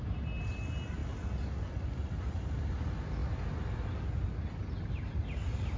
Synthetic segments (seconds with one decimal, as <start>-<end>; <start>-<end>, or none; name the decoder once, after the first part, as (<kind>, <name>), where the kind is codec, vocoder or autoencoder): none